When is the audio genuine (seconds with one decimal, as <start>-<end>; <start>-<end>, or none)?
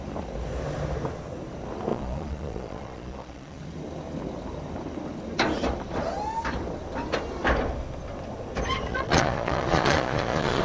0.0-1.9; 3.6-8.9